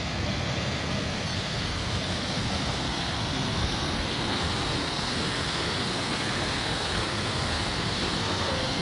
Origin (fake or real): fake